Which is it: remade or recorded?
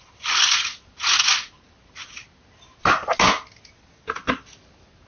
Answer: recorded